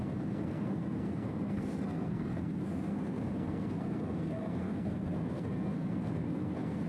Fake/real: fake